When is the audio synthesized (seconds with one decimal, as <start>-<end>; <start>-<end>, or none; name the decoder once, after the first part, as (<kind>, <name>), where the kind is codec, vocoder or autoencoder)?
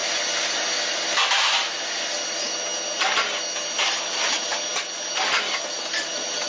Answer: none